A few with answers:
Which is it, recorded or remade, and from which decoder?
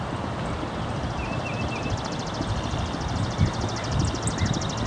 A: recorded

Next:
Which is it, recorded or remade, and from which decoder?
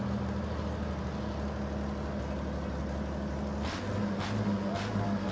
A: recorded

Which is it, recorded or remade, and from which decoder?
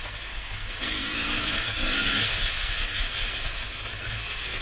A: remade, codec, SNAC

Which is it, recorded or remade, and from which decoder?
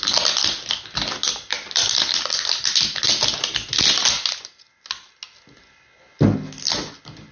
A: recorded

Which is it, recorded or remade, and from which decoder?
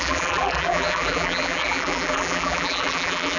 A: remade, vocoder, BigVGAN v2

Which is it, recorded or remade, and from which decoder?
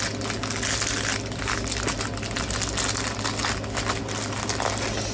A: recorded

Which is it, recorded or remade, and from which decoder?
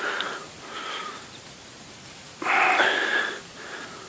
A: recorded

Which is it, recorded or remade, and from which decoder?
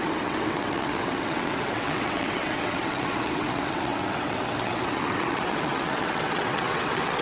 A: remade, vocoder, WaveNeXt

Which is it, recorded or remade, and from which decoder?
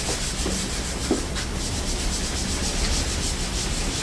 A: recorded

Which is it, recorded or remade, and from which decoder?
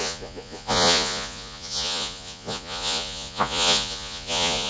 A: remade, vocoder, Vocos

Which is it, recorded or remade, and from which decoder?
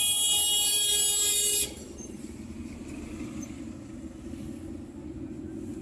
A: recorded